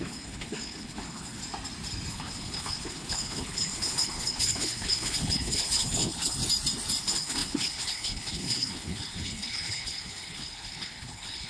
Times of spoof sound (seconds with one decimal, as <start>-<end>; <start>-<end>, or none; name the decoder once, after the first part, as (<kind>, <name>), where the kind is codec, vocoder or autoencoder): 0.0-1.4 (codec, HILCodec); 2.1-6.4; 7.0-11.5